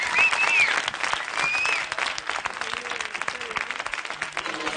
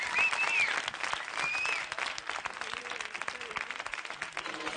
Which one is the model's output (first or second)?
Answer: second